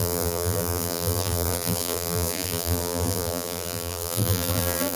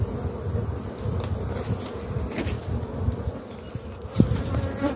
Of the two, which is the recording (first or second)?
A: second